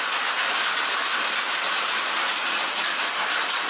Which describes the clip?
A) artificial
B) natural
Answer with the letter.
B